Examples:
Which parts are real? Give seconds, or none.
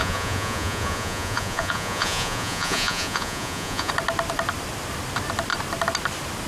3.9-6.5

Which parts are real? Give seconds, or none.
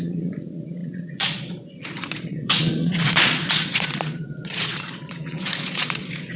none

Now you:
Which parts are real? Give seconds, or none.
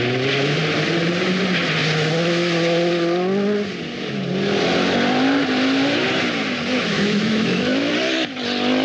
0.0-6.9; 7.9-8.8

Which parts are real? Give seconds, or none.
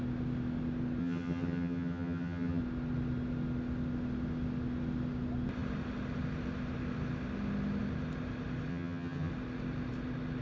0.0-1.0; 2.6-8.7; 9.3-10.4